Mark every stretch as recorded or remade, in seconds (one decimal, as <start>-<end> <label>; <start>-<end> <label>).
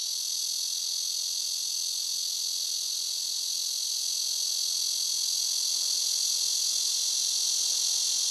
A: 0.0-8.3 recorded